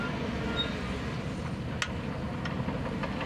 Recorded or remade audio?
recorded